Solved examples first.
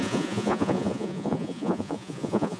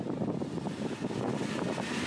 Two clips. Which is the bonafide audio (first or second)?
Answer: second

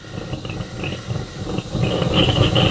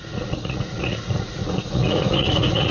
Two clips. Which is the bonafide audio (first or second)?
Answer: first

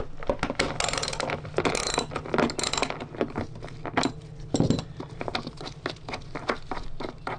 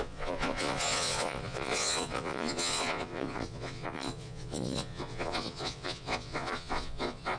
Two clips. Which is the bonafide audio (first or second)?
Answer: first